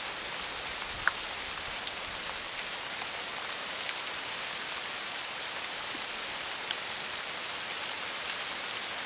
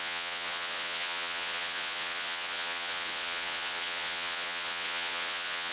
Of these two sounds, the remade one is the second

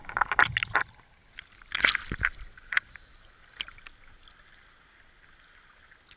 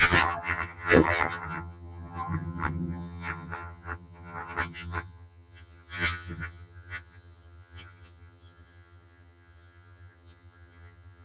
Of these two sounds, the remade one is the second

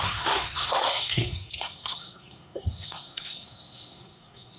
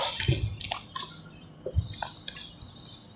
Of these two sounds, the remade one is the first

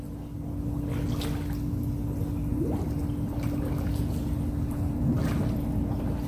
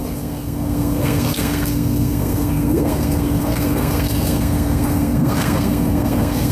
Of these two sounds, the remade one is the second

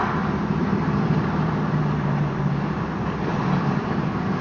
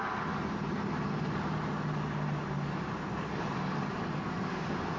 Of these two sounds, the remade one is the first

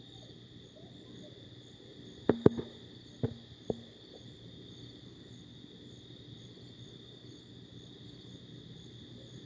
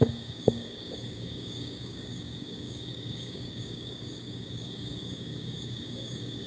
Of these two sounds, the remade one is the second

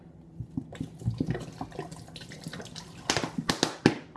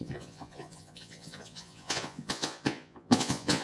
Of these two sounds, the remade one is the second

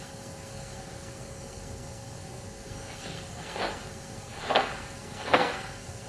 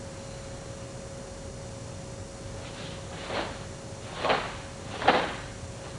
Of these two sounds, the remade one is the first